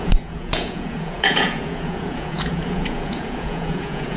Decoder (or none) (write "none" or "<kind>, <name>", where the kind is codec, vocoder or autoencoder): vocoder, Vocos